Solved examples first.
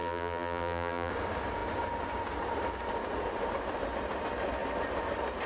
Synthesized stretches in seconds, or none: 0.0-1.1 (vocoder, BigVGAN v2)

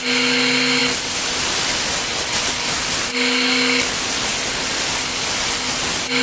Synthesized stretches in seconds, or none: none

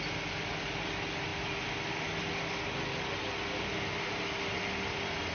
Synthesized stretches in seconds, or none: none

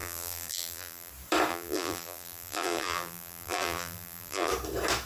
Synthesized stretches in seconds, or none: 0.0-1.1 (vocoder, BigVGAN v2); 1.5-4.5

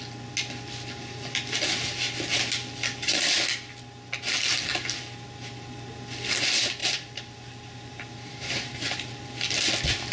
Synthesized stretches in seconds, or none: 6.8-9.1 (vocoder, BigVGAN v2)

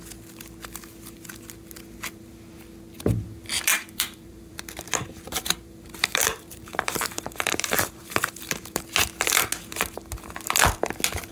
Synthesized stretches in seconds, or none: 3.7-8.8 (vocoder, BigVGAN v2)